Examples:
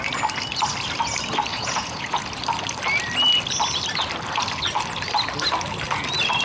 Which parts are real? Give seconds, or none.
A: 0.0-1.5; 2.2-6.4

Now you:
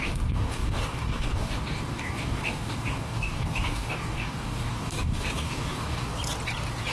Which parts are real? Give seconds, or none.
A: 6.1-6.9

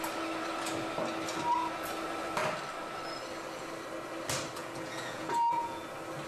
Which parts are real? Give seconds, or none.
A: 0.0-4.6; 5.8-6.3

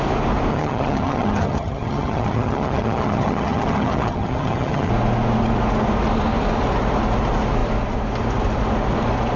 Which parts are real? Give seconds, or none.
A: 0.0-0.5; 4.9-9.4